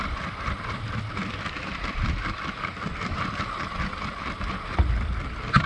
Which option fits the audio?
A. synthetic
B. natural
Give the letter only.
B